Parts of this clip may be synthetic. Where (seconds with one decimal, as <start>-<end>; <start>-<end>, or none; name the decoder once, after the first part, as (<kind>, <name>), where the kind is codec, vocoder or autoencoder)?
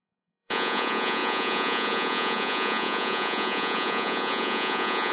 0.0-5.1 (vocoder, Vocos)